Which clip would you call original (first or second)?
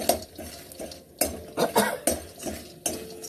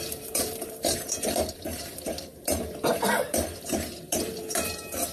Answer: first